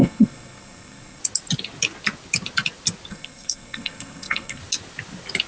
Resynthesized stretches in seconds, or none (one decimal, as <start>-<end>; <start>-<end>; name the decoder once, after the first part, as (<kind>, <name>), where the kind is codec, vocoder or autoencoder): 0.0-1.2 (codec, SNAC); 3.1-4.6